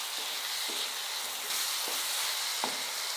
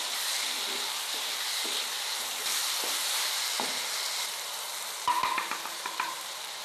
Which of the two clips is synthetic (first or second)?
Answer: second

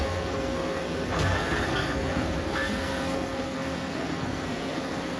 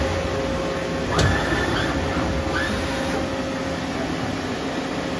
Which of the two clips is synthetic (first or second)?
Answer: first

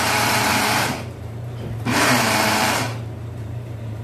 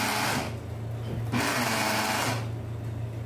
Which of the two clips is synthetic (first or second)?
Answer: first